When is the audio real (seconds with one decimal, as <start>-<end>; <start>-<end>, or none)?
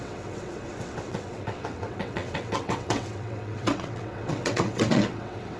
none